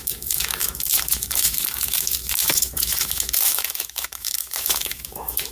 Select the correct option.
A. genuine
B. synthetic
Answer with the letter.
B